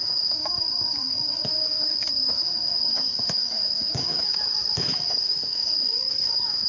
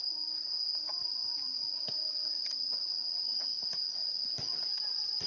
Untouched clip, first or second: second